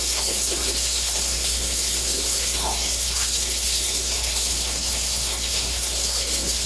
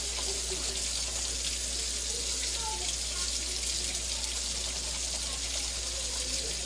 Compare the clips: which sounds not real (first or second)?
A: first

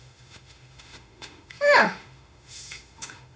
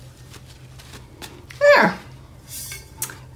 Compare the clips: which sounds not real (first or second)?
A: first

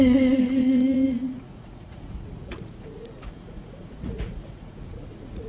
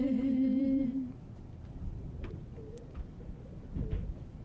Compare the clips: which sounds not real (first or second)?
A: first